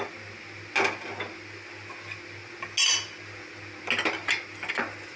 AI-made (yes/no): no